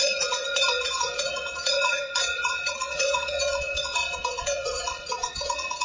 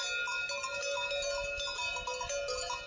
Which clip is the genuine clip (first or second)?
second